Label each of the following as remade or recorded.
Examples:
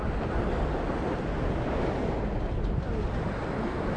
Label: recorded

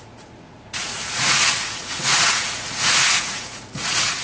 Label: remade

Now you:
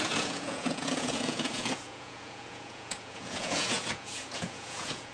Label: remade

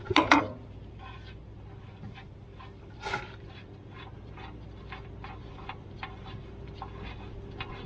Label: recorded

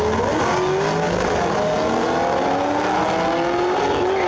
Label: recorded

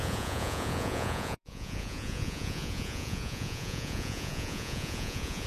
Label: remade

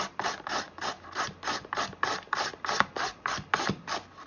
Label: recorded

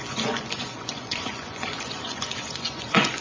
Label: remade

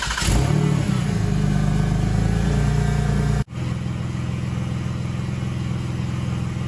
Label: recorded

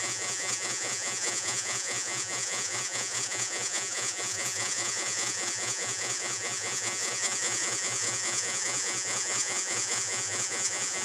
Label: remade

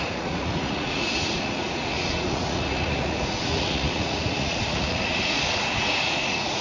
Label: remade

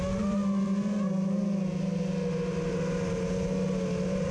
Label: recorded